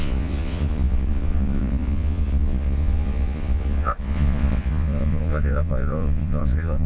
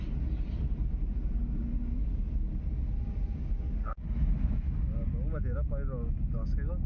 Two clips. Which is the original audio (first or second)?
second